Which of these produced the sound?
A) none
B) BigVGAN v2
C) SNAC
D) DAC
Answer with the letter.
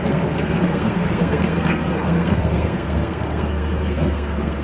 C